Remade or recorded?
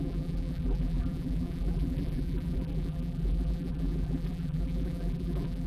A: remade